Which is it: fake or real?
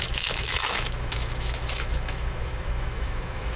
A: fake